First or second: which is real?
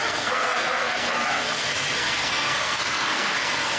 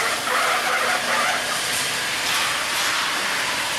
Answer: second